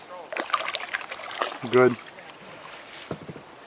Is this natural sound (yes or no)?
yes